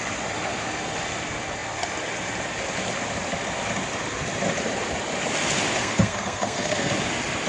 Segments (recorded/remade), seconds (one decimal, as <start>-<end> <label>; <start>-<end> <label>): 0.0-5.8 recorded; 5.8-6.9 remade; 6.9-7.5 recorded